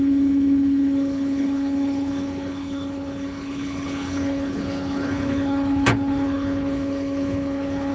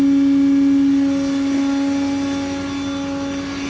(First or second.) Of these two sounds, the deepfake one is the first